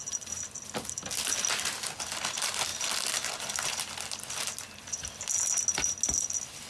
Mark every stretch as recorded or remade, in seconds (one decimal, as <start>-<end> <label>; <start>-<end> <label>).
0.0-6.7 recorded